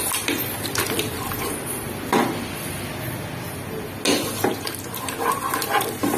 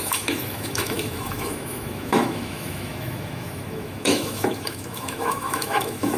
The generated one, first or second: second